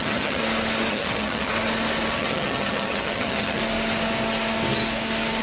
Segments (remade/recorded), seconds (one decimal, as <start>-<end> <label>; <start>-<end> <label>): 0.0-0.4 remade; 0.4-0.9 recorded; 0.9-1.5 remade; 1.5-2.1 recorded; 2.1-3.6 remade; 3.6-5.4 recorded